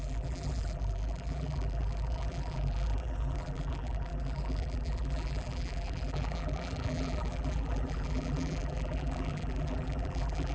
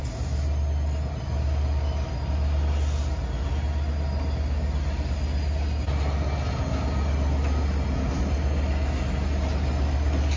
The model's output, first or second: first